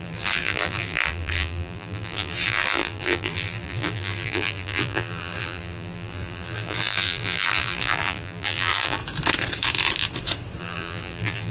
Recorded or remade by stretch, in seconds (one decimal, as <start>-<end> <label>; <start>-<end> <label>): 0.0-9.0 remade; 9.0-10.6 recorded; 10.6-11.5 remade